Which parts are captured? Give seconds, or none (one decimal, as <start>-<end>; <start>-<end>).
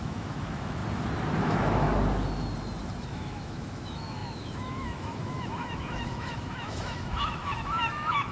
0.8-1.4; 1.9-3.1